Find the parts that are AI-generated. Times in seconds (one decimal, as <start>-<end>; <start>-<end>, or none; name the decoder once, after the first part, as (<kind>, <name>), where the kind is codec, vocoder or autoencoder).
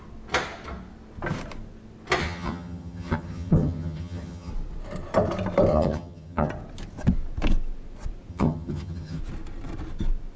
2.2-4.5 (vocoder, HiFi-GAN); 5.7-6.5; 8.3-9.2